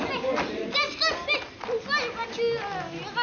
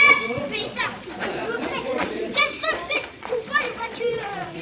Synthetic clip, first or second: second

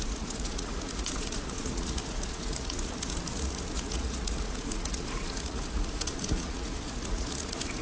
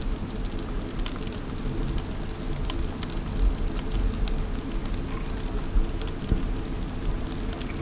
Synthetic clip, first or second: first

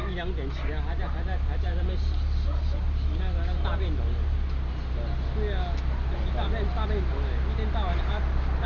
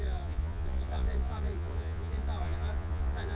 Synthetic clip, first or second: second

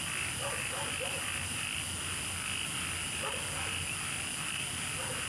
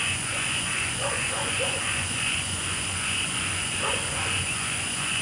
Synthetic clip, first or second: second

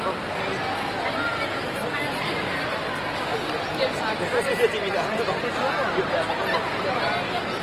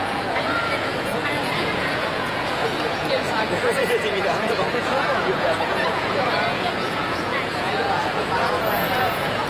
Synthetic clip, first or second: second